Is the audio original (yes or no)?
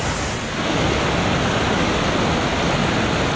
yes